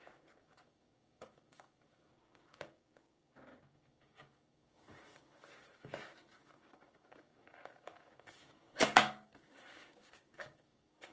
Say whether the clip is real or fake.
fake